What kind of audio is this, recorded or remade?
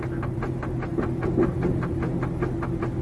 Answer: recorded